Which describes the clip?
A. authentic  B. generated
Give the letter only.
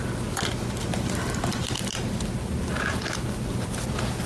A